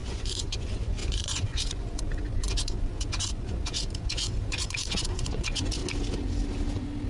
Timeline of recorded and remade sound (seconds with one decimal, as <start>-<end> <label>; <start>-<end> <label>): 0.0-5.8 remade; 5.8-7.1 recorded

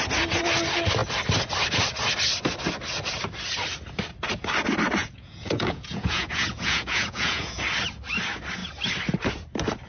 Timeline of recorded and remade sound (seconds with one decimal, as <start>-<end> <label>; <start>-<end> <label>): 0.0-5.0 recorded; 5.0-7.6 remade; 7.6-9.9 recorded

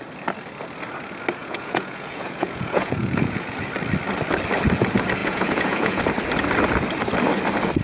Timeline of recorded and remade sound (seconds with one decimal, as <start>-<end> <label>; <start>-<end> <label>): 0.0-1.4 recorded; 1.4-3.7 remade; 3.7-5.2 recorded; 5.2-6.0 remade; 6.0-7.8 recorded